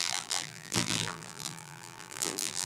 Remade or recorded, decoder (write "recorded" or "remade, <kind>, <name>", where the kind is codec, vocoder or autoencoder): remade, vocoder, BigVGAN v2